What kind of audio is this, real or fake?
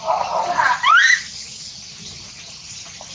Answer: real